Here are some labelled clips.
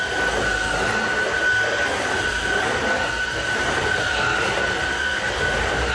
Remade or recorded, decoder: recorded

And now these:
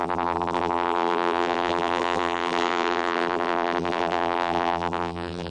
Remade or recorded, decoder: remade, vocoder, BigVGAN v2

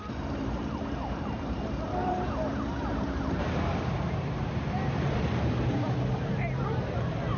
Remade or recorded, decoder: remade, vocoder, BigVGAN v2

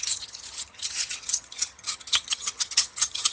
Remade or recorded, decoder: remade, vocoder, HiFi-GAN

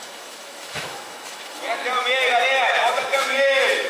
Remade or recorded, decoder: remade, autoencoder, DAC-VAE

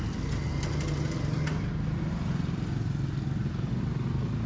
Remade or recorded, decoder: recorded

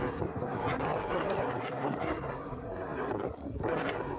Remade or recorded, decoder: remade, codec, SNAC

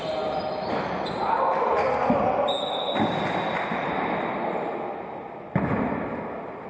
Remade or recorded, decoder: recorded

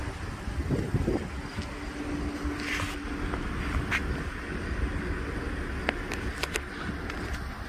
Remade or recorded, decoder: recorded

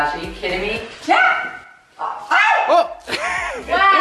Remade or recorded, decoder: recorded